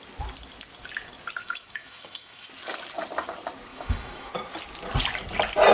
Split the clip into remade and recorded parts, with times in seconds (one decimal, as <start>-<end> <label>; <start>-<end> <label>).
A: 0.0-1.4 recorded; 1.4-2.5 remade; 2.5-3.7 recorded; 3.7-4.3 remade; 4.3-5.7 recorded